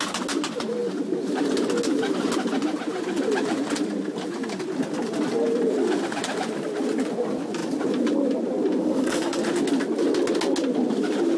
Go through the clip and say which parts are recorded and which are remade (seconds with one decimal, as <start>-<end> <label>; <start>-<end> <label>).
0.0-8.8 recorded; 8.8-9.4 remade; 9.4-11.4 recorded